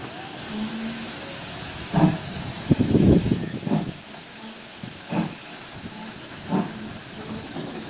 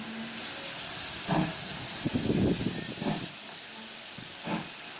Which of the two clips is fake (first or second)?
first